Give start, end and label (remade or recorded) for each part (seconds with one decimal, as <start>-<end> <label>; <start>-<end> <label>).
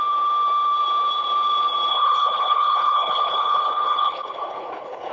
0.0-1.9 recorded; 1.9-5.1 remade